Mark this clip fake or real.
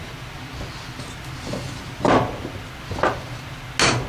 real